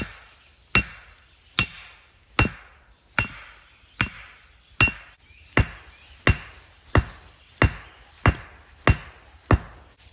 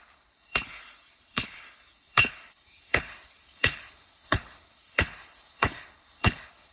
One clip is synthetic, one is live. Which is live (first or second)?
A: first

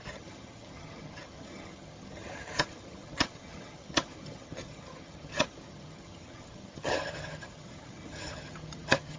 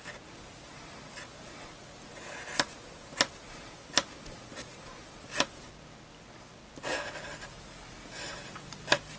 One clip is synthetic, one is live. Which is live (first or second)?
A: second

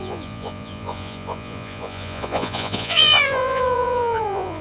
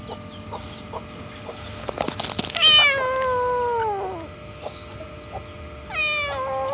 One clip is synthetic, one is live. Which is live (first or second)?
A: second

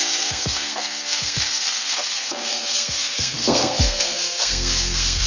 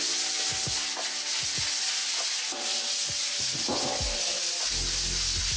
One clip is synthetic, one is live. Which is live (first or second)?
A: second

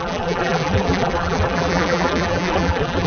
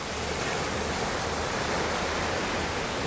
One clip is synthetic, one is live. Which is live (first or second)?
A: second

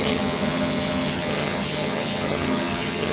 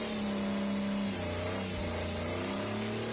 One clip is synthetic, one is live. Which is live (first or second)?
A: second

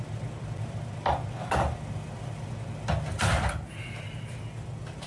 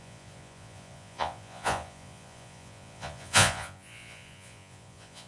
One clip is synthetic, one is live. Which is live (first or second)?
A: first